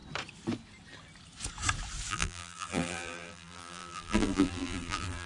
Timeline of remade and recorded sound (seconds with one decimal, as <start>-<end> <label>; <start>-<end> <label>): 0.0-2.1 recorded; 2.1-5.3 remade

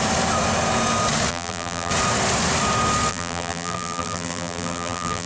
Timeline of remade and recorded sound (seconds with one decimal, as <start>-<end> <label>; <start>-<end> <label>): 0.0-1.3 recorded; 1.3-1.9 remade; 1.9-3.1 recorded; 3.1-5.3 remade

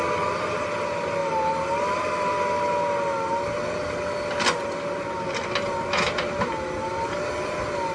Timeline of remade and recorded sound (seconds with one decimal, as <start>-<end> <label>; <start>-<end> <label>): 0.0-7.9 recorded

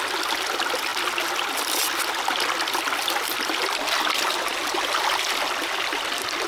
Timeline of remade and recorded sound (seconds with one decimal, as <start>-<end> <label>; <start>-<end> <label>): 0.0-6.5 recorded

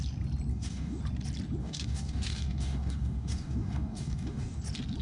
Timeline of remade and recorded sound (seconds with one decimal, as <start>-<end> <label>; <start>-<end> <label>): 0.0-0.5 recorded; 0.5-1.0 remade; 1.0-1.6 recorded; 1.6-4.6 remade; 4.6-5.0 recorded